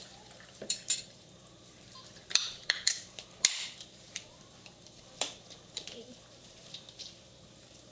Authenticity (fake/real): fake